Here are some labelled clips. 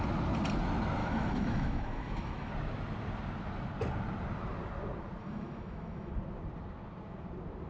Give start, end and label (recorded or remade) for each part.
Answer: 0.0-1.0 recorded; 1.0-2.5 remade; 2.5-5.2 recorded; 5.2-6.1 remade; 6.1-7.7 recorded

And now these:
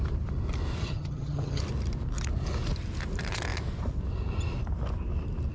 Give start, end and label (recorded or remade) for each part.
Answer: 0.0-0.8 recorded; 0.8-1.6 remade; 1.6-5.5 recorded

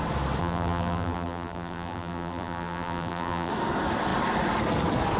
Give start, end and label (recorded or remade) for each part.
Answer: 0.0-0.4 recorded; 0.4-3.5 remade; 3.5-5.2 recorded

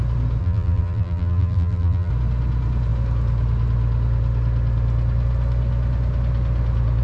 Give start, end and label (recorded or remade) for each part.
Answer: 0.0-0.4 recorded; 0.4-2.1 remade; 2.1-7.0 recorded

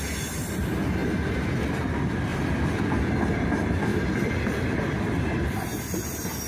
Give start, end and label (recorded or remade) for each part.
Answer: 0.0-2.3 recorded; 2.3-2.8 remade; 2.8-3.9 recorded; 3.9-5.0 remade; 5.0-6.5 recorded

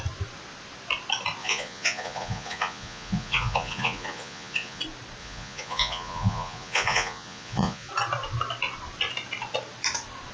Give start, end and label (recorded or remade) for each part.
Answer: 0.0-1.4 recorded; 1.4-4.8 remade; 4.8-5.2 recorded; 5.2-7.9 remade; 7.9-10.3 recorded

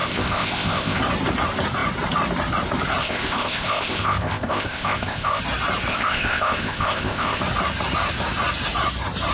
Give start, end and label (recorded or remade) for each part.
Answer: 0.0-1.0 remade; 1.0-3.0 recorded; 3.0-5.4 remade; 5.4-5.9 recorded; 5.9-7.4 remade; 7.4-9.3 recorded

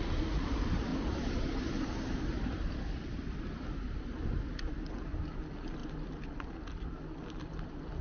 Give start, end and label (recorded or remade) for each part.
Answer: 0.0-0.9 recorded; 0.9-4.9 remade; 4.9-8.0 recorded